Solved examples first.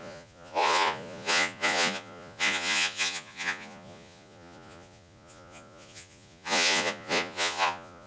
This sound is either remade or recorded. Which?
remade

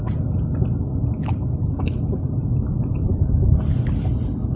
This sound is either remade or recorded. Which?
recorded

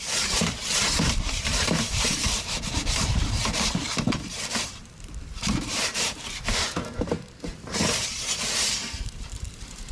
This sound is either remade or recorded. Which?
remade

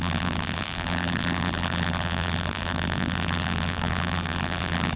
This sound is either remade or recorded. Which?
remade